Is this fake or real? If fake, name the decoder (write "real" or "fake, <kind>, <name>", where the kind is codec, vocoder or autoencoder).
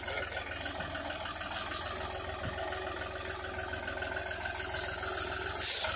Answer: real